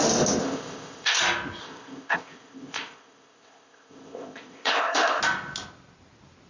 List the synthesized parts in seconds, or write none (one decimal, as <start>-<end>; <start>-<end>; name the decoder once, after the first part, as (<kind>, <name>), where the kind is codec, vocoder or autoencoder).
0.4-1.2 (codec, ZipCodec); 1.6-5.2